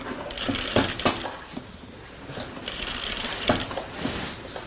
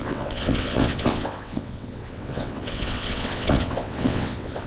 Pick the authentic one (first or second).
first